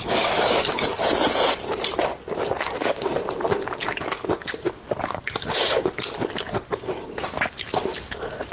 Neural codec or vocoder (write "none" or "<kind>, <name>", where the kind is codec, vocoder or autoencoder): vocoder, BigVGAN v2